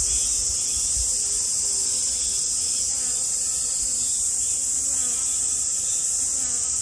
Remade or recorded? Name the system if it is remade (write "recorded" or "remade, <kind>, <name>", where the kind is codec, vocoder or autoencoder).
recorded